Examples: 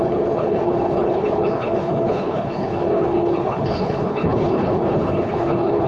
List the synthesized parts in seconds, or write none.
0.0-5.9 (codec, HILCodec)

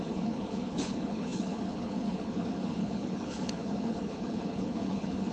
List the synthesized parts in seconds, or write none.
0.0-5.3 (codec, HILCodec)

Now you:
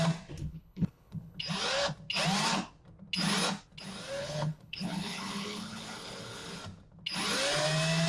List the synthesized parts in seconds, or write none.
0.4-1.4 (codec, HILCodec); 4.2-6.6